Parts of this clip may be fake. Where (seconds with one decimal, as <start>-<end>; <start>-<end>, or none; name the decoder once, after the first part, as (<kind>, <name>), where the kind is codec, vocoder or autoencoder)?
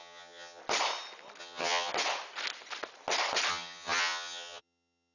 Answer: 0.0-0.6 (vocoder, HiFi-GAN); 1.4-1.9; 3.5-5.1